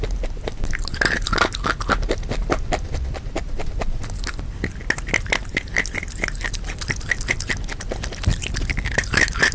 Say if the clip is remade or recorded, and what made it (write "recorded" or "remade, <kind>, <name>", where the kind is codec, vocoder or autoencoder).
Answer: recorded